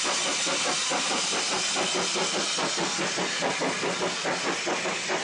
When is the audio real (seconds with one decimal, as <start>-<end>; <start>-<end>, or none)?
0.0-5.2